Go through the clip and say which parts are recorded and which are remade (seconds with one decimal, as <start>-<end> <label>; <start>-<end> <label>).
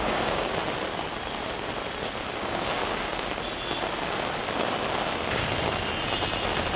0.0-0.5 remade; 0.5-2.4 recorded; 2.4-2.8 remade; 2.8-6.8 recorded